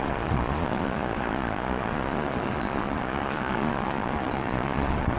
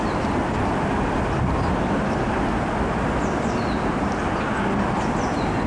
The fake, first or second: first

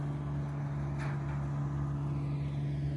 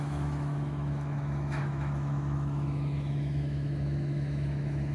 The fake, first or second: second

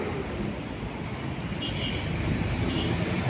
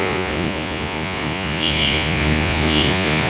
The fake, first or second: second